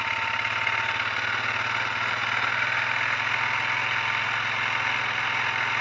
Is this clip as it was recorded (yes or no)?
yes